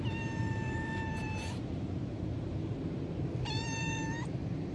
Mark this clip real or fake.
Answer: fake